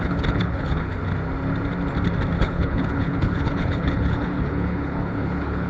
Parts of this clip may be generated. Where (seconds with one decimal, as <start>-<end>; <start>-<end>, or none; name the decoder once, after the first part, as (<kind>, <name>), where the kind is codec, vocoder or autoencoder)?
0.0-1.0 (codec, HILCodec); 2.4-5.7